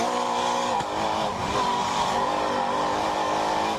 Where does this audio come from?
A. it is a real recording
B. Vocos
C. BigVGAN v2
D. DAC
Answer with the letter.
D